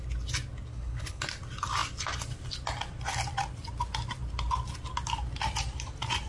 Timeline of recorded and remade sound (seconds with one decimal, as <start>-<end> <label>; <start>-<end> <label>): 0.0-0.7 recorded; 0.7-1.2 remade; 1.2-6.3 recorded